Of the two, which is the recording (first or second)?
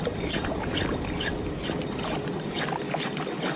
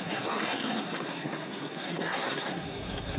first